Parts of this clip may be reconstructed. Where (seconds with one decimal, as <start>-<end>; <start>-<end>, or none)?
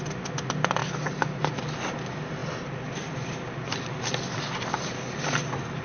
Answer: 2.4-5.8